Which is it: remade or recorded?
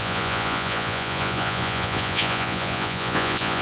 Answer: remade